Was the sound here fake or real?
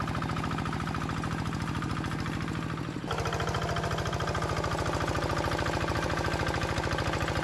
real